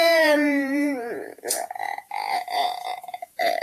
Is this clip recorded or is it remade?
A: remade